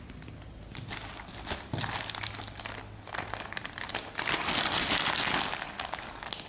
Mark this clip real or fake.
real